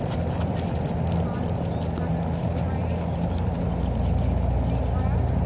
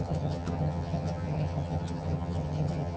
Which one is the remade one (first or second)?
second